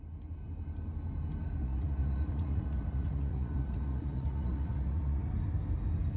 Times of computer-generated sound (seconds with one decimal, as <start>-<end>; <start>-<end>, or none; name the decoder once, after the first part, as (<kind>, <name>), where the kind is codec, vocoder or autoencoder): 1.6-5.3 (vocoder, Vocos)